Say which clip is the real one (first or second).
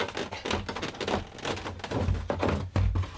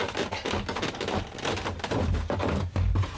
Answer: first